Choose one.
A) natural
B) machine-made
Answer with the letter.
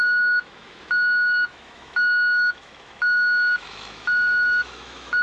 B